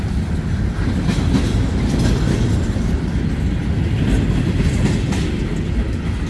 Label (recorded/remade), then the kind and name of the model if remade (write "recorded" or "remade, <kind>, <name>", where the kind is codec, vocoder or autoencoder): recorded